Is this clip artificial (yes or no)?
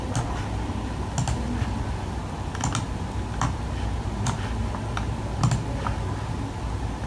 no